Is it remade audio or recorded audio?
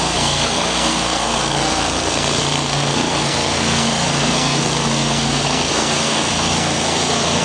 remade